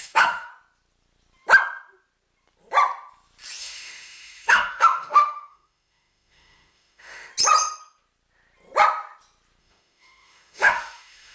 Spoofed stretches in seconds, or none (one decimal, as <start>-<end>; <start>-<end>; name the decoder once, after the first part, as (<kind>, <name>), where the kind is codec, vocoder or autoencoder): 0.0-0.5 (autoencoder, DAC-VAE); 3.6-7.3; 9.6-11.3